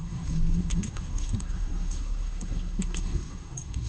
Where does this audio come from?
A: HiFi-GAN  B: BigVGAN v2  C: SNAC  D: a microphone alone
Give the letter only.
C